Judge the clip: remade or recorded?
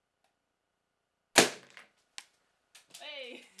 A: recorded